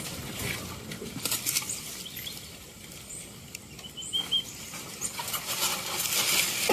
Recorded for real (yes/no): yes